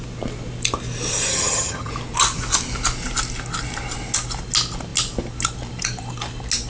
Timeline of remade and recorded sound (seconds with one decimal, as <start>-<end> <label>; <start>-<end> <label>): 0.0-1.3 recorded; 1.3-1.9 remade; 1.9-6.7 recorded